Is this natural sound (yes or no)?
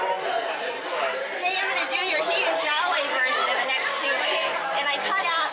yes